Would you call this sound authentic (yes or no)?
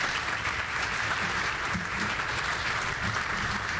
no